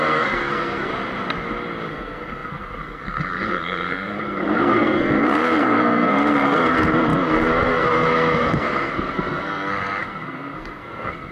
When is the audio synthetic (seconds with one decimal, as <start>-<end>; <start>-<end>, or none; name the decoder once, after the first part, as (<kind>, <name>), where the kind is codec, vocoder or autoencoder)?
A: 0.0-0.9 (codec, SNAC); 1.9-11.3